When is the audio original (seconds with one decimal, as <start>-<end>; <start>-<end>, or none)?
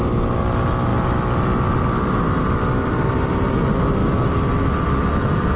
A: 0.0-0.9; 3.2-4.0; 5.1-5.6